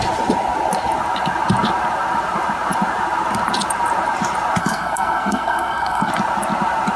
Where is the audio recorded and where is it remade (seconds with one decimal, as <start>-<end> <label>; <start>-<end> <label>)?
0.0-4.6 recorded; 4.6-6.1 remade; 6.1-7.0 recorded